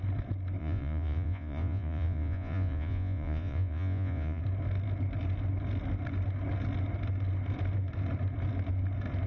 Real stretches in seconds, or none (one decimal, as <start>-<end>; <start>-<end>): 0.0-0.6; 4.4-9.3